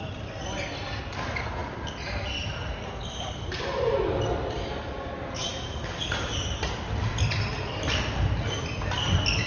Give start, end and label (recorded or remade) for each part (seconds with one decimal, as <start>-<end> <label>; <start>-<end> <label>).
0.0-9.5 recorded